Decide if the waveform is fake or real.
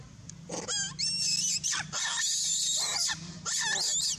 real